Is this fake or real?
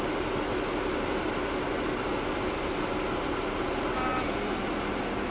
real